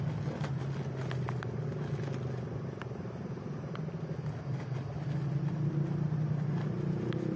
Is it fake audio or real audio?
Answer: real